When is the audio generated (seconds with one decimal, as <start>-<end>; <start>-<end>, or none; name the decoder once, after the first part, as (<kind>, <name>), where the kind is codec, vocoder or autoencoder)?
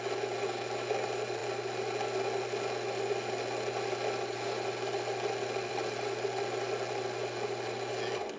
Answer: none